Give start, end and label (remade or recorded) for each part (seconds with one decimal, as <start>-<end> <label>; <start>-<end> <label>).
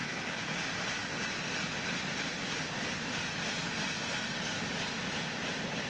0.0-0.6 remade; 0.6-5.9 recorded